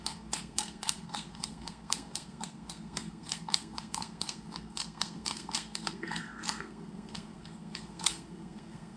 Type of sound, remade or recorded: remade